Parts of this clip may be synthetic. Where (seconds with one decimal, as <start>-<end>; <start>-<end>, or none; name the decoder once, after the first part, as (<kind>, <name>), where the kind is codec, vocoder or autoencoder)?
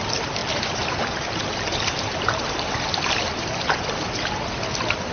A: 0.4-3.5 (vocoder, BigVGAN v2)